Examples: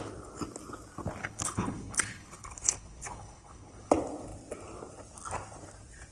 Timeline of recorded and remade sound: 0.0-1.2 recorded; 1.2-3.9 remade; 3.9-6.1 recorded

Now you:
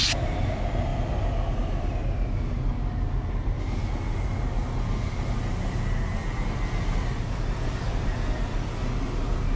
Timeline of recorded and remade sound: 0.0-9.6 recorded

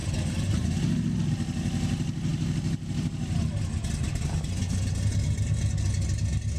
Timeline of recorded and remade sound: 0.0-1.3 remade; 1.3-2.3 recorded; 2.3-3.1 remade; 3.1-5.1 recorded; 5.1-5.9 remade; 5.9-6.6 recorded

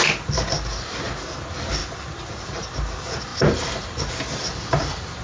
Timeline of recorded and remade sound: 0.0-5.2 recorded

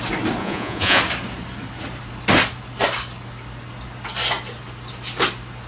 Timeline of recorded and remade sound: 0.0-0.4 recorded; 0.4-1.0 remade; 1.0-5.7 recorded

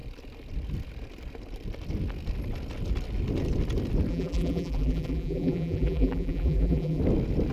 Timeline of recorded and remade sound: 0.0-4.1 recorded; 4.1-7.0 remade; 7.0-7.5 recorded

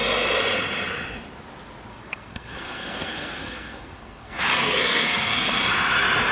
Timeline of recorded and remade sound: 0.0-1.9 recorded; 1.9-5.6 remade; 5.6-6.3 recorded